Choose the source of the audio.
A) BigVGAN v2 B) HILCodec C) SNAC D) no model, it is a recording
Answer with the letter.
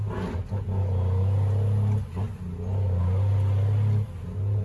D